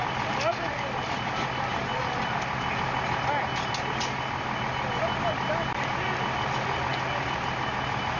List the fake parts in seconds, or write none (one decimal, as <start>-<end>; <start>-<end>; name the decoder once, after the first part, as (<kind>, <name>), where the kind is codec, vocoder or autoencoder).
none